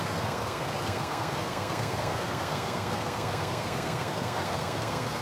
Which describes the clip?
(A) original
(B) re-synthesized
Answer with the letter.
B